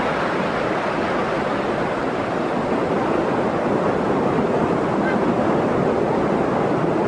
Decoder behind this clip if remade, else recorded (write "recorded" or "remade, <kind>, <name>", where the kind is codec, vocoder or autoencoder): recorded